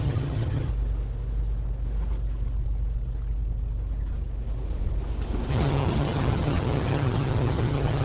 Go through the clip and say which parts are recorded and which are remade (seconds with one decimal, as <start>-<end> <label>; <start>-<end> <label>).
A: 0.0-0.7 remade; 0.7-5.5 recorded; 5.5-8.0 remade